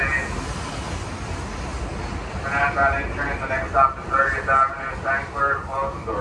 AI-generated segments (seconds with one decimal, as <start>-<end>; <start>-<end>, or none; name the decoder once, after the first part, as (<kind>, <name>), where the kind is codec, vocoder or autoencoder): none